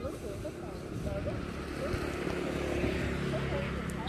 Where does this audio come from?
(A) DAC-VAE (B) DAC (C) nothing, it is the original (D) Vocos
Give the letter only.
C